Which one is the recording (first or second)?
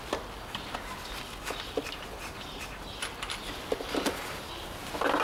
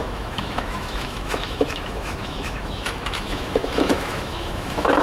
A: first